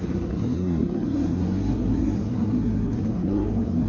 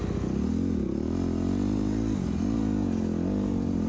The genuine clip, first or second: second